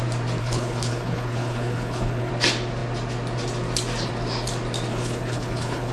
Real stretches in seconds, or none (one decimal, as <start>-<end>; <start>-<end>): 0.0-0.4; 2.3-4.9